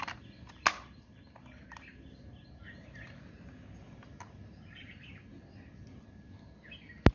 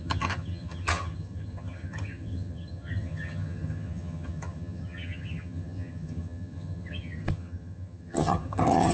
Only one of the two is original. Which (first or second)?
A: first